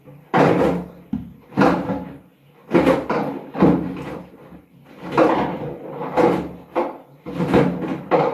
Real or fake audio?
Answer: real